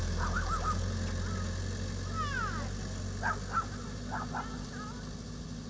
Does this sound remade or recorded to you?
recorded